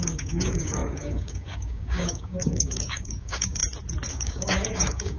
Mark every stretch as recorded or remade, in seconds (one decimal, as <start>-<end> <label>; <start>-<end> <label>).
0.0-3.6 remade; 3.6-4.1 recorded; 4.1-5.2 remade